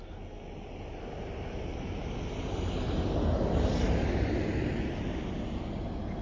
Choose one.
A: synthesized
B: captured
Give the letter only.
B